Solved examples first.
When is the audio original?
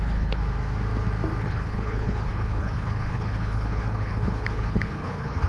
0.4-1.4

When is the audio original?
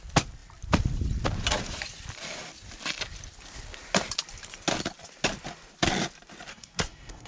0.0-6.5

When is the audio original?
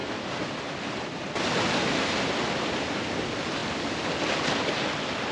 0.0-5.3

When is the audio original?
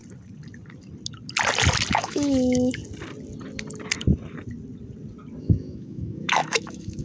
0.0-1.9; 2.8-5.4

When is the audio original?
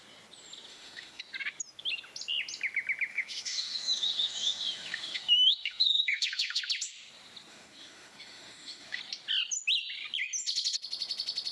0.0-0.7; 1.2-3.1; 6.6-7.5; 9.0-11.5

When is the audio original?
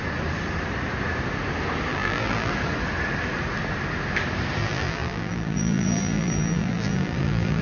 0.0-1.9; 2.5-4.6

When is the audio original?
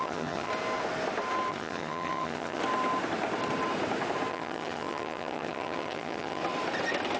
0.5-1.5; 2.6-4.3; 6.4-7.2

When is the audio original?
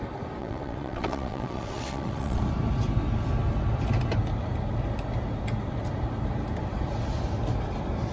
0.0-0.4; 2.4-8.1